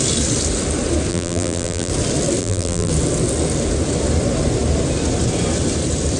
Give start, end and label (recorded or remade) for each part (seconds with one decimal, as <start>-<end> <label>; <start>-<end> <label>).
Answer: 0.0-1.1 recorded; 1.1-1.9 remade; 1.9-2.4 recorded; 2.4-2.9 remade; 2.9-6.2 recorded